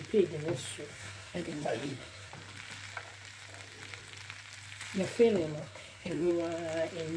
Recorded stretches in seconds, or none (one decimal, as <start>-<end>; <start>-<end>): 0.0-0.9; 2.3-5.6; 6.3-7.2